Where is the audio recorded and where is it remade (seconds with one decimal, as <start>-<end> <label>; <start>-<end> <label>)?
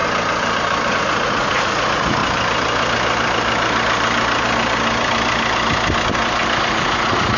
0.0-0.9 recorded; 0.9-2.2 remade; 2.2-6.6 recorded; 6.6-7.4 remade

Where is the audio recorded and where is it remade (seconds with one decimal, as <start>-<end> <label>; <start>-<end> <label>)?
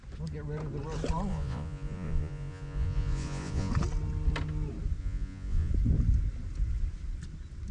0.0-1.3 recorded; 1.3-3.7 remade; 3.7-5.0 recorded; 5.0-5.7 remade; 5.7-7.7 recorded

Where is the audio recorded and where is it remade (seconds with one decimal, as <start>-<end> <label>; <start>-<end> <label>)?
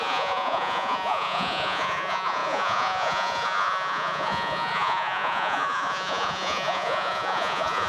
0.0-7.9 remade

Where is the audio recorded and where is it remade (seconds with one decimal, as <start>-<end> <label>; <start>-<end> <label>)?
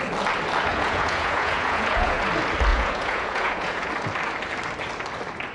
0.0-0.7 recorded; 0.7-2.2 remade; 2.2-2.7 recorded; 2.7-3.9 remade; 3.9-5.5 recorded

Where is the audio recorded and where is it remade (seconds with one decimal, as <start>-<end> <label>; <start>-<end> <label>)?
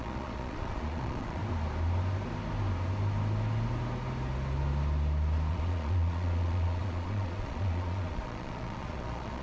0.0-1.4 remade; 1.4-5.5 recorded; 5.5-9.4 remade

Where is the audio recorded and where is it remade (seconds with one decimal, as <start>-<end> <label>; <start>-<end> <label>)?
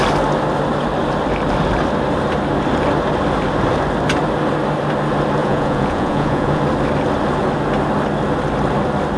0.0-5.4 recorded; 5.4-6.6 remade; 6.6-9.2 recorded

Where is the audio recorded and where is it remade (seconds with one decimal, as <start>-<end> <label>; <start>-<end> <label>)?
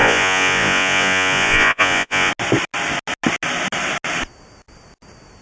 0.0-2.3 remade; 2.3-5.4 recorded